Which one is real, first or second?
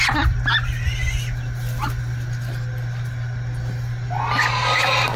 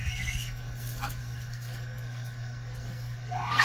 first